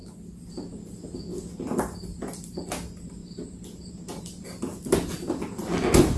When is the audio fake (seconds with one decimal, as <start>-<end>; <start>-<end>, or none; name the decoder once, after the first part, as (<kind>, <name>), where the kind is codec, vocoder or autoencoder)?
none